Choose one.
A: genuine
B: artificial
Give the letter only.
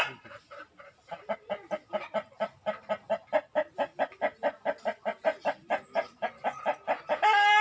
A